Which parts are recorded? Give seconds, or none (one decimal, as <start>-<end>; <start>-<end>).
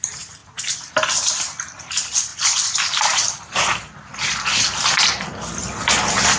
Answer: 0.0-6.4